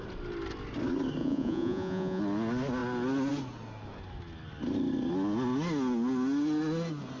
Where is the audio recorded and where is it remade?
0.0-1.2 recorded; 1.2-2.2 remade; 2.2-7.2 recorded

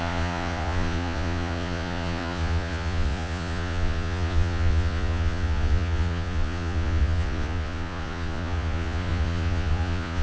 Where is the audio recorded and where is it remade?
0.0-10.2 remade

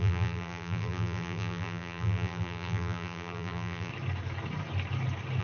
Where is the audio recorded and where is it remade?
0.0-3.9 remade; 3.9-5.4 recorded

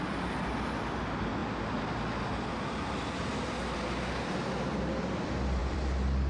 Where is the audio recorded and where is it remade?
0.0-5.6 recorded; 5.6-6.3 remade

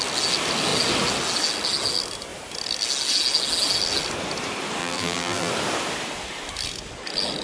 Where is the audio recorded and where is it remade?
0.0-4.8 recorded; 4.8-5.5 remade; 5.5-7.4 recorded

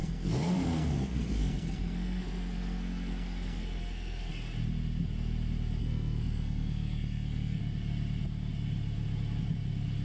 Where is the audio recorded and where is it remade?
0.0-4.3 remade; 4.3-5.8 recorded; 5.8-7.6 remade; 7.6-10.0 recorded